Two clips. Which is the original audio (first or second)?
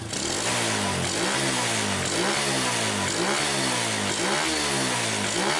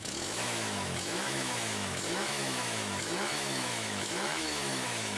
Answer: first